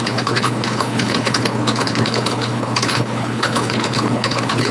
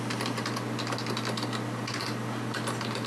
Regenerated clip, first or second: first